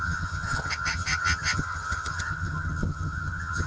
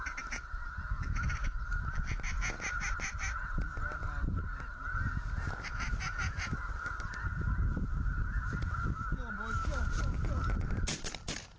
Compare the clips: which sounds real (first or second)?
second